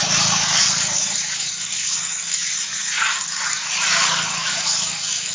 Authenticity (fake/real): fake